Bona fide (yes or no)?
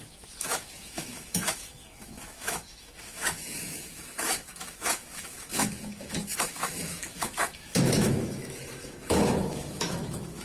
no